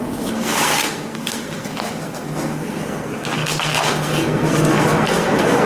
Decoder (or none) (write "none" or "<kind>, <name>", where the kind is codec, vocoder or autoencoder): codec, SNAC